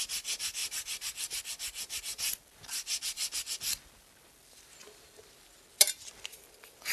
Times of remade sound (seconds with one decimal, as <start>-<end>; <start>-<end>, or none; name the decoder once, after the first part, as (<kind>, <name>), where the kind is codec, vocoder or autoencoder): 0.6-4.7 (vocoder, BigVGAN v2)